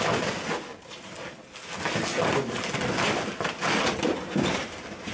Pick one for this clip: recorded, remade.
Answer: recorded